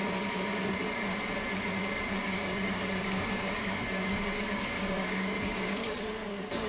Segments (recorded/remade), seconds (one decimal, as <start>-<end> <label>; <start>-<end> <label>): 0.0-2.2 recorded; 2.2-5.9 remade; 5.9-6.7 recorded